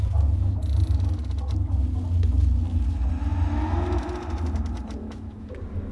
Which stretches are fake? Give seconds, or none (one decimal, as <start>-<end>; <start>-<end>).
5.0-5.5